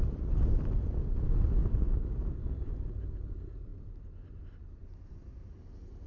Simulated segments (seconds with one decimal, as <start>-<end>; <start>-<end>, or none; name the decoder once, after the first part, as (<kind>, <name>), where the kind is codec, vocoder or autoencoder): none

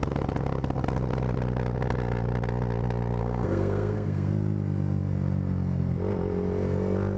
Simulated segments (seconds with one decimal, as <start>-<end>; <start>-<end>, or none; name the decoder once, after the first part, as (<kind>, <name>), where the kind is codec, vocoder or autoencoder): 3.2-4.3 (codec, SNAC)

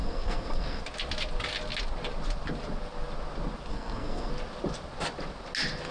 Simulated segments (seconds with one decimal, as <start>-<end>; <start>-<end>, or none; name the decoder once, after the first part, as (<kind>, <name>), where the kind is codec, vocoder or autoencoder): 0.0-0.8 (codec, SNAC); 3.7-4.3

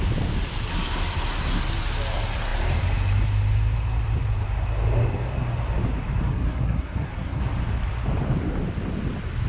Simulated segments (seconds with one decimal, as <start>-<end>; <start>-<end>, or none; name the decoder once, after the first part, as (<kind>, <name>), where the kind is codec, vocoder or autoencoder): 0.7-1.6 (codec, SNAC); 6.3-7.4

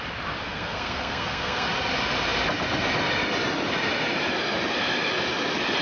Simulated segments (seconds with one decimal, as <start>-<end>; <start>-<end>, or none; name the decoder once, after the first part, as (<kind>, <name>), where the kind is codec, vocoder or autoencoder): 0.4-1.7 (codec, SNAC)